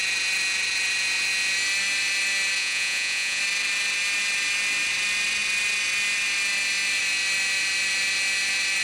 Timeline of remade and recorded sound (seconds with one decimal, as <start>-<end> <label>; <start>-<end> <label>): 0.0-2.6 recorded; 2.6-3.4 remade; 3.4-8.8 recorded